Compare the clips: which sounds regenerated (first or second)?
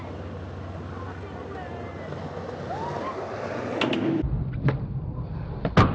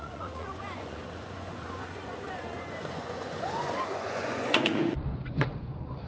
second